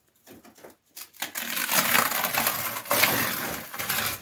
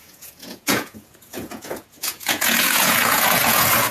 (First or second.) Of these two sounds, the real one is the first